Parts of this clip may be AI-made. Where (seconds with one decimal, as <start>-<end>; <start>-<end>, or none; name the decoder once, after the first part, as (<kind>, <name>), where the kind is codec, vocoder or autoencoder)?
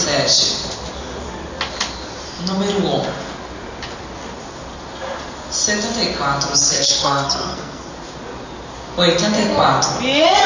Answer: 6.6-7.9 (codec, SNAC)